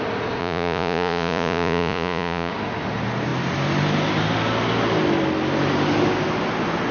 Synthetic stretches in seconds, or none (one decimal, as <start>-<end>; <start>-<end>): 0.4-2.5